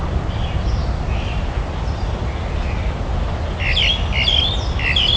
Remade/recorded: recorded